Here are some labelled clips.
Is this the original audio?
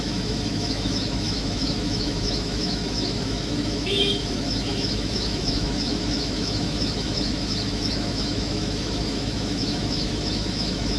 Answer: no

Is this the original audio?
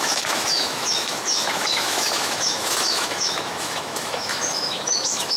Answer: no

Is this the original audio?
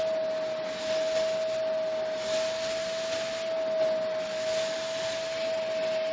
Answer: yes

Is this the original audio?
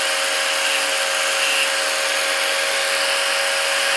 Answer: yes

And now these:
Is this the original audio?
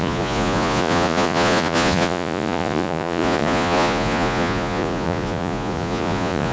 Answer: no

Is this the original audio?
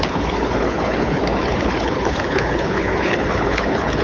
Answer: no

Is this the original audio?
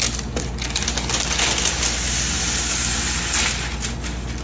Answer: yes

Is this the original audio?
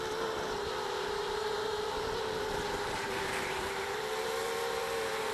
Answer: no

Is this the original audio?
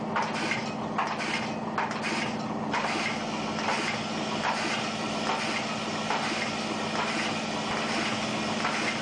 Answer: yes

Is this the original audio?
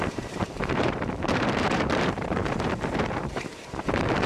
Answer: no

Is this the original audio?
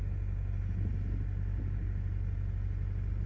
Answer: yes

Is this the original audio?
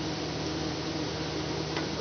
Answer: yes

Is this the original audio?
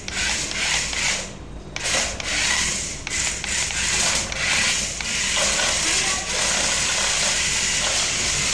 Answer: yes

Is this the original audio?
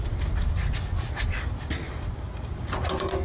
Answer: yes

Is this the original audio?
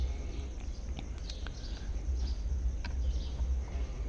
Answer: yes